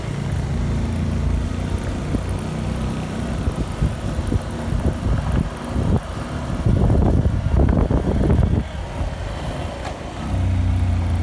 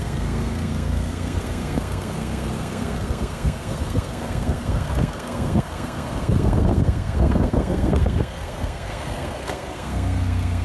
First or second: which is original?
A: first